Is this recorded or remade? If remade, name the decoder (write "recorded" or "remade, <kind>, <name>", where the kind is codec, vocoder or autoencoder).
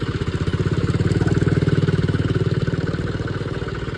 recorded